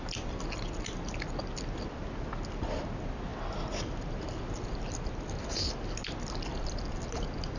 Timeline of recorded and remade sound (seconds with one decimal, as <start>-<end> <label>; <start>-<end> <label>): 0.0-7.6 recorded